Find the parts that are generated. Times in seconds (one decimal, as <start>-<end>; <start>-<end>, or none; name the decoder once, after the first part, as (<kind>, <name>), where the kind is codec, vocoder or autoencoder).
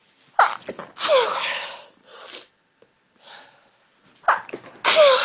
none